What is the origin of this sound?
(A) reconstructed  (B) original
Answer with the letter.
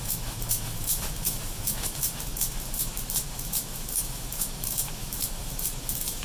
A